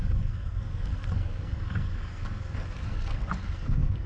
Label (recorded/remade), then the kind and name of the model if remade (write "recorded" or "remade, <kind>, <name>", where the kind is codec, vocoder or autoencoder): remade, codec, SNAC